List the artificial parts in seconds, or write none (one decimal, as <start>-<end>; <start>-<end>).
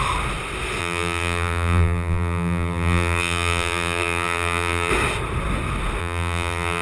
0.8-4.9; 6.0-6.8